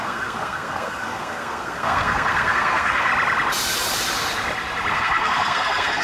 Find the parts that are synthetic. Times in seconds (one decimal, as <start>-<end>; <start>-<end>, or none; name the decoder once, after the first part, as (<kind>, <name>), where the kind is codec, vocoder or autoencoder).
0.0-3.1 (codec, SNAC); 4.9-6.0

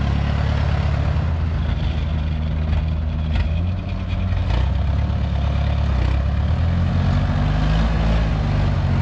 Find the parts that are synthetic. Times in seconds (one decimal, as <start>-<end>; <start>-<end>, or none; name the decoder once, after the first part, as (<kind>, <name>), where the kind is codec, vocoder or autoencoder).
none

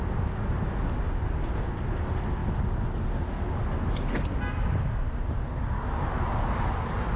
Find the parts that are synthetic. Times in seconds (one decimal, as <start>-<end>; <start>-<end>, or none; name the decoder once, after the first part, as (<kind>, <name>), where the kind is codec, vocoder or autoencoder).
none

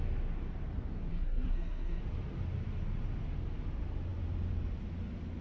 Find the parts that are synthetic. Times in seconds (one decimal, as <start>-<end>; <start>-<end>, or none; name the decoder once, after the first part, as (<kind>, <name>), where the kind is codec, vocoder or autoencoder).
1.1-2.0 (codec, SNAC)

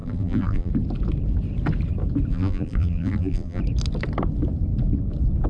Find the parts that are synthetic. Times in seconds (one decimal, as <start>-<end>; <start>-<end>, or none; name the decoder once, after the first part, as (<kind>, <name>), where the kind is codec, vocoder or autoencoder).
0.0-0.7 (vocoder, BigVGAN v2); 2.3-3.6

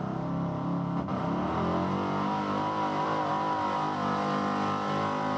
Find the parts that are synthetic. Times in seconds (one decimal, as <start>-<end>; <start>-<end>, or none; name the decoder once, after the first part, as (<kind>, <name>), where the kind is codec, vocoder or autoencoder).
none